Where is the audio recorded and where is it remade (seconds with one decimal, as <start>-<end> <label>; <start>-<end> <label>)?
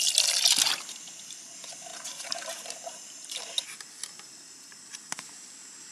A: 0.0-5.9 recorded